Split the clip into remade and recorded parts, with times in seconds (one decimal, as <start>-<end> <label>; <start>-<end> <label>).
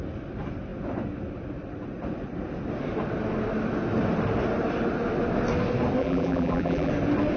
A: 0.0-6.0 recorded; 6.0-6.9 remade; 6.9-7.4 recorded